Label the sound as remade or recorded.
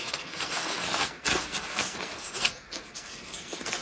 remade